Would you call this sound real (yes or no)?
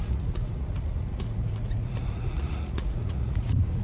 no